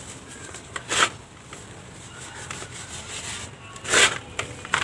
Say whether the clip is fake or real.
fake